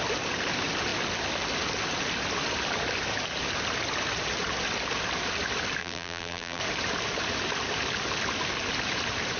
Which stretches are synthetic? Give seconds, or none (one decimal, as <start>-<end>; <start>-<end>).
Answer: 5.8-6.6

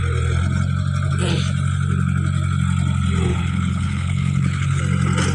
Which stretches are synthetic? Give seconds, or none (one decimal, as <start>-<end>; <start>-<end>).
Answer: 3.3-4.8